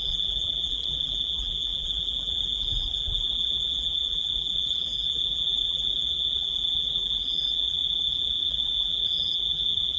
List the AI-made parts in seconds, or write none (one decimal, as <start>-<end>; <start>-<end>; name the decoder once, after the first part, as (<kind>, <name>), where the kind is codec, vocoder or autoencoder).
0.0-10.0 (vocoder, BigVGAN v2)